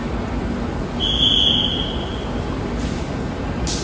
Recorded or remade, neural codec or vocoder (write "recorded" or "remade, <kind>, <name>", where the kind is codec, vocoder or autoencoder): recorded